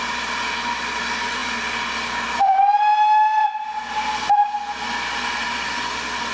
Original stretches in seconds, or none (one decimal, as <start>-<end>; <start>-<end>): 0.0-6.3